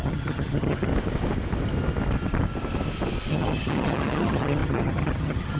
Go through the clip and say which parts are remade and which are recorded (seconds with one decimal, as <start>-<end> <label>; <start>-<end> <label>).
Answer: 0.0-0.9 remade; 0.9-3.3 recorded; 3.3-5.6 remade